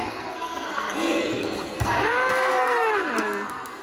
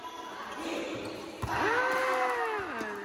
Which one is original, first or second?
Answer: second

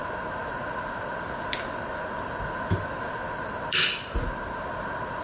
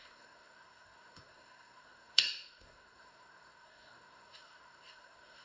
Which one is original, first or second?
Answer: first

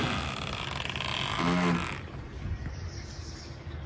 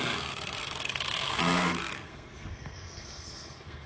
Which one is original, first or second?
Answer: first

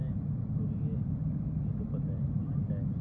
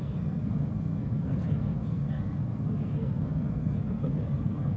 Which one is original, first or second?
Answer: first